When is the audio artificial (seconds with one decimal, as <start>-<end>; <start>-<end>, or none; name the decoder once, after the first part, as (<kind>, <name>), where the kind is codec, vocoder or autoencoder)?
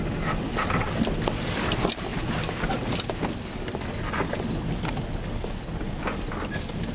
none